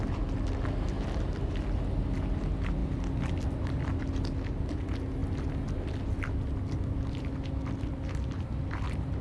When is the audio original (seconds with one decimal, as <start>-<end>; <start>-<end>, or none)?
0.0-9.2